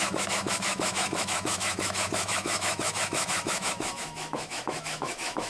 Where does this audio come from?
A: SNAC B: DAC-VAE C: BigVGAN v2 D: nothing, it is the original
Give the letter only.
B